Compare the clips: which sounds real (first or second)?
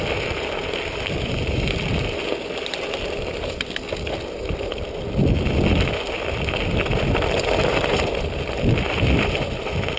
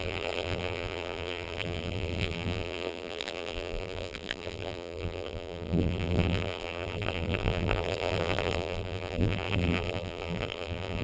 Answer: first